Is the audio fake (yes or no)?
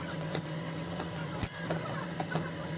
yes